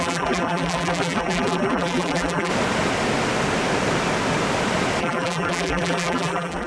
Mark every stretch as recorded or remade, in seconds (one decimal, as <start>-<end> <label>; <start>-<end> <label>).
0.0-2.5 remade; 2.5-5.0 recorded; 5.0-6.7 remade